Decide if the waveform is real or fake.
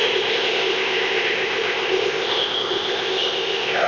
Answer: fake